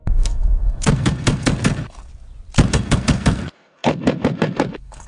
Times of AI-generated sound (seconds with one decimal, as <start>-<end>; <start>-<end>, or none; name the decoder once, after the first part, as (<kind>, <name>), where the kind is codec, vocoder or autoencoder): 0.0-2.1 (codec, SNAC); 2.7-5.1